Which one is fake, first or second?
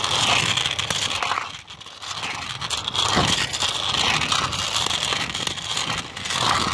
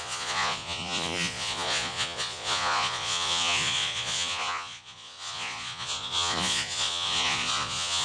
second